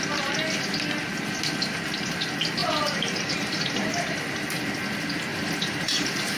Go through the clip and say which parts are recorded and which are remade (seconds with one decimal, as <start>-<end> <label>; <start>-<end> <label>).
0.0-2.6 recorded; 2.6-3.9 remade; 3.9-5.3 recorded; 5.3-6.4 remade